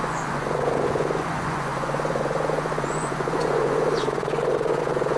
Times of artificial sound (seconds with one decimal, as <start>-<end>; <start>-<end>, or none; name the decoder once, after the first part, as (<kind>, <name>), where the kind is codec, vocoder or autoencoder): 0.0-5.2 (vocoder, Vocos)